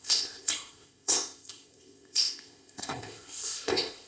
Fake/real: fake